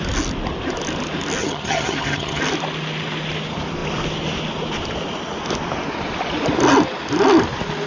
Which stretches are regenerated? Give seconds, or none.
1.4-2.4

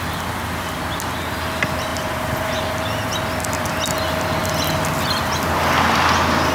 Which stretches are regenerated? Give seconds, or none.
1.9-2.6

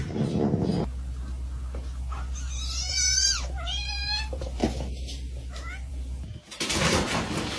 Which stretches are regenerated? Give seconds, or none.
0.0-0.7; 2.9-4.6; 5.9-7.6

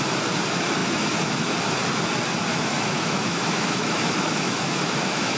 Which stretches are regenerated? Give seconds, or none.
2.5-5.4